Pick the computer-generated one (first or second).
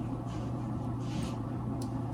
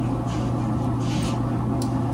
first